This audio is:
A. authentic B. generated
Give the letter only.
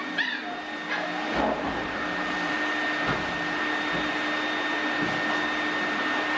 A